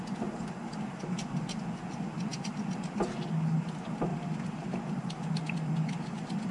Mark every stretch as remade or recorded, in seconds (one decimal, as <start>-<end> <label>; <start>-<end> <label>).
0.0-6.5 recorded